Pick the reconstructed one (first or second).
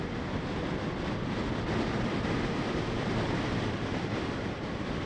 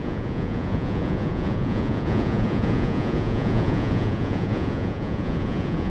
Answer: second